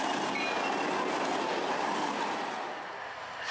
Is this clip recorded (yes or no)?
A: yes